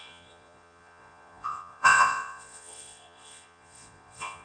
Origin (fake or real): fake